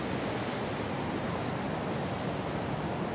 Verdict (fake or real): real